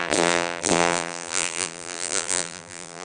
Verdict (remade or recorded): remade